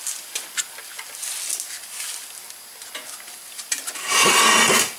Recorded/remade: recorded